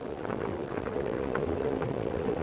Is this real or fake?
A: fake